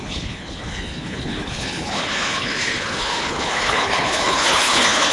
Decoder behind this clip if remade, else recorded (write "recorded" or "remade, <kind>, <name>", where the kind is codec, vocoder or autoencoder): remade, codec, HILCodec